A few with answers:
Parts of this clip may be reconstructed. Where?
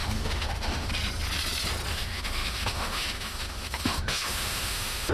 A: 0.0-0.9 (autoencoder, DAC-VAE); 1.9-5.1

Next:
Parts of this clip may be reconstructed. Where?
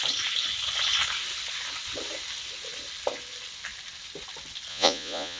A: 4.7-5.4 (vocoder, Vocos)